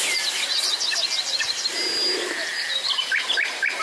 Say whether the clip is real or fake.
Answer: real